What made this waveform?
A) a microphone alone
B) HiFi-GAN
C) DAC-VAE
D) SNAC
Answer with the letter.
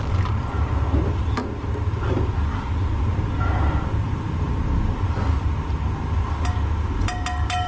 A